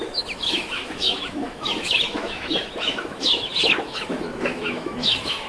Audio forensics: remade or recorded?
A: remade